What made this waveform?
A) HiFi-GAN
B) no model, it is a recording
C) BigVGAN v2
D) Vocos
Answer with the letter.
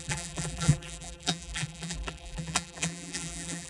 C